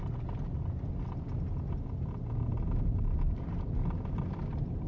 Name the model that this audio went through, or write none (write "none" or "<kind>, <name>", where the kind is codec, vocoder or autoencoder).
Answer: none